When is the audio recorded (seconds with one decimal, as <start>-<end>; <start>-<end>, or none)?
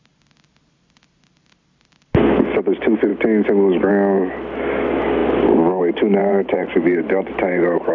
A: 0.0-6.2